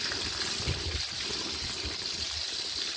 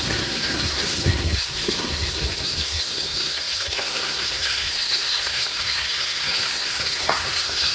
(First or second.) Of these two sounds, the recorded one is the first